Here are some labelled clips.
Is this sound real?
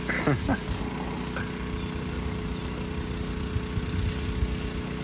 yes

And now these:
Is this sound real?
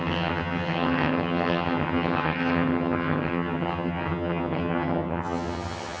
no